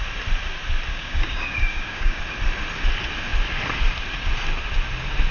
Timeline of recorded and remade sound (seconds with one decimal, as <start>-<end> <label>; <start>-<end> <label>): 0.0-0.9 recorded; 0.9-2.2 remade; 2.2-5.3 recorded